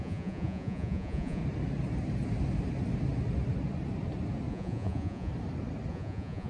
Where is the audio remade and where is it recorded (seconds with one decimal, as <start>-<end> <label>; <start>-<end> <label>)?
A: 0.0-1.4 remade; 1.4-4.5 recorded; 4.5-5.3 remade; 5.3-5.9 recorded; 5.9-6.5 remade

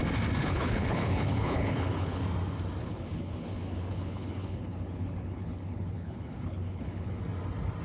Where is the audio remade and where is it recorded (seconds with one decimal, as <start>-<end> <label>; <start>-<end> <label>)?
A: 0.0-0.4 recorded; 0.4-2.2 remade; 2.2-2.8 recorded; 2.8-7.2 remade; 7.2-7.8 recorded

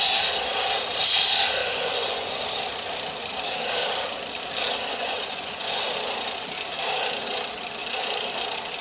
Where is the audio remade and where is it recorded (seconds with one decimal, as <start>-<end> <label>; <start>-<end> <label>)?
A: 0.0-1.6 recorded; 1.6-2.4 remade; 2.4-4.9 recorded; 4.9-5.8 remade; 5.8-8.8 recorded

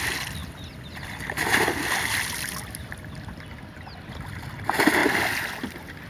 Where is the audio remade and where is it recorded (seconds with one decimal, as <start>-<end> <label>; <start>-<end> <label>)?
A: 0.0-6.1 recorded

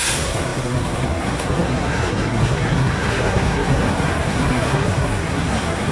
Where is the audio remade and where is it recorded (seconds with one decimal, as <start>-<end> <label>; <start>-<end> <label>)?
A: 0.0-5.9 remade

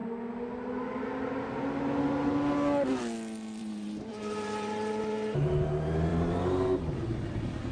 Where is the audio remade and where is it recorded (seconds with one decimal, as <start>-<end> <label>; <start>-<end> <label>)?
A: 0.0-3.6 recorded; 3.6-5.5 remade; 5.5-6.1 recorded; 6.1-6.9 remade; 6.9-7.7 recorded

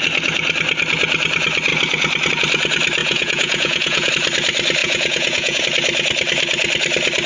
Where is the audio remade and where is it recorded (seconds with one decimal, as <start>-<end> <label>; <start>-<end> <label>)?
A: 0.0-3.0 recorded; 3.0-4.1 remade; 4.1-4.8 recorded; 4.8-5.6 remade; 5.6-7.3 recorded

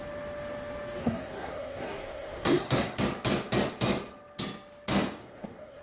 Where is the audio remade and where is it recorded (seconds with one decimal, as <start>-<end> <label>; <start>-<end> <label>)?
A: 0.0-1.0 recorded; 1.0-3.0 remade; 3.0-5.2 recorded; 5.2-5.8 remade